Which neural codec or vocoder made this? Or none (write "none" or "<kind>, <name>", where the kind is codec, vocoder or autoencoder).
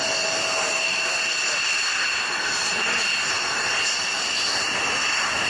none